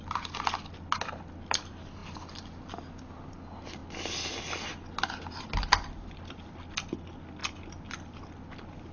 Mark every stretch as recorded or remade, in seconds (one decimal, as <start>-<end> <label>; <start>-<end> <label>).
0.0-8.9 recorded